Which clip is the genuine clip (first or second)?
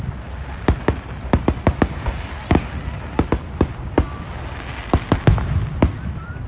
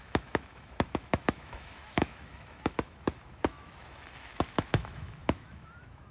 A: first